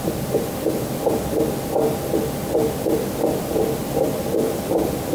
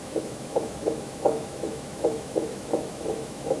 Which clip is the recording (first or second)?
first